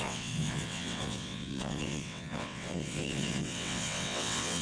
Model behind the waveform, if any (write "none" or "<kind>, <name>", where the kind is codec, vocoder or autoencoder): vocoder, WaveNeXt